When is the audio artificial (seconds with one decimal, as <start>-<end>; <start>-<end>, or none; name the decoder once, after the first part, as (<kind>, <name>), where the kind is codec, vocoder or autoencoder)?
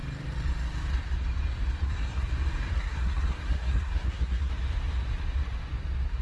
1.8-2.3 (codec, SNAC); 2.7-4.5